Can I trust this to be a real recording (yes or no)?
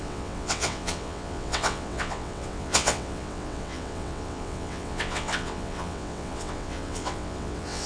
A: no